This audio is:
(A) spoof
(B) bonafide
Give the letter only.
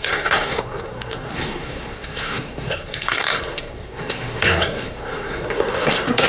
A